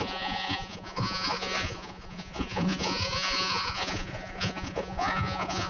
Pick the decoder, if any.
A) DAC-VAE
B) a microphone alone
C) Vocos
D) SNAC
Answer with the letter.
C